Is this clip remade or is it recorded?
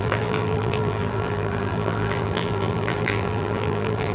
remade